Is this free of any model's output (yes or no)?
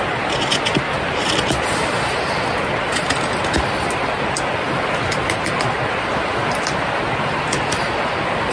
yes